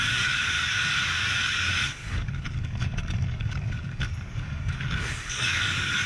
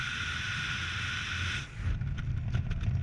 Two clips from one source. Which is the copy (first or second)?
first